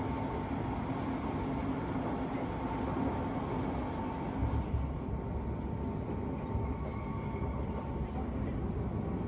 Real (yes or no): yes